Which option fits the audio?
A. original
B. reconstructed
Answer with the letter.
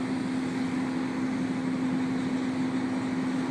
A